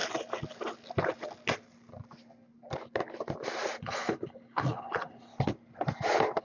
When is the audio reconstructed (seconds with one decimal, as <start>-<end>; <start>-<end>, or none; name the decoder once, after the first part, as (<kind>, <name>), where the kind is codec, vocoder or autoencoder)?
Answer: 3.8-5.3 (codec, HILCodec)